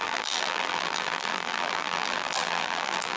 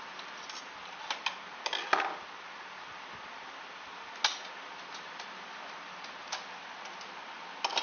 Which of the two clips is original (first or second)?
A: second